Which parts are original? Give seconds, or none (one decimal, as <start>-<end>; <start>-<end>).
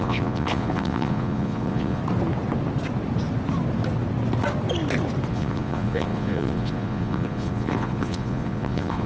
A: 2.0-5.3